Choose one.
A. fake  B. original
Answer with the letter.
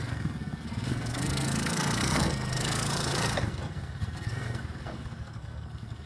A